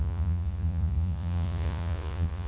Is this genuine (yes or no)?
no